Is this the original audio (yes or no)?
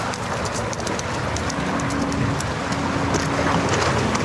yes